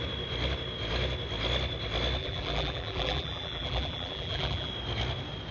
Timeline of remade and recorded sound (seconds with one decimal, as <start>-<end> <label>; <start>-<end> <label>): 0.0-2.2 recorded; 2.2-4.7 remade; 4.7-5.5 recorded